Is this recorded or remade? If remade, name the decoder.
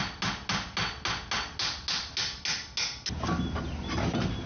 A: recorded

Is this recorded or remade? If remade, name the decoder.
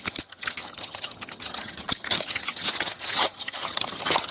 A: remade, vocoder, HiFi-GAN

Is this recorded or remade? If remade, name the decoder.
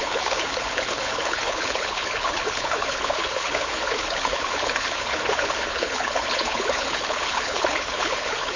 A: remade, codec, HILCodec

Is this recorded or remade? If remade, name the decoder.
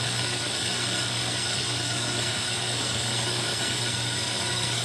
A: remade, codec, SNAC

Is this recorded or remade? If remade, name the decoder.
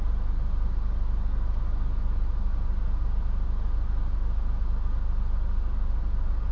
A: recorded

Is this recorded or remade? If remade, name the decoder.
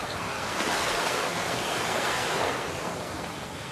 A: remade, codec, SNAC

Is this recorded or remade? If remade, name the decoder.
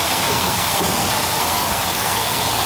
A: remade, codec, SNAC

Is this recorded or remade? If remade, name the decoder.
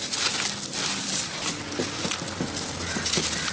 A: recorded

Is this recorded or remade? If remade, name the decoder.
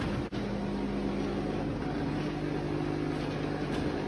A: recorded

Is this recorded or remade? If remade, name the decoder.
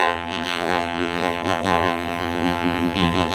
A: remade, vocoder, BigVGAN v2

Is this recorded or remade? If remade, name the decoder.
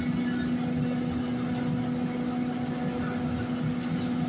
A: recorded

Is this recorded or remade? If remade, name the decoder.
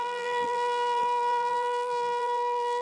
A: remade, vocoder, BigVGAN v2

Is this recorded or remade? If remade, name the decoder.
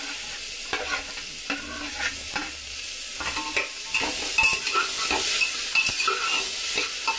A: recorded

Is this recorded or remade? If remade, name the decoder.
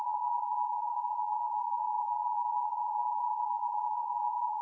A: remade, vocoder, Vocos